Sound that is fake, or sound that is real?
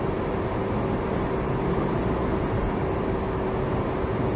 real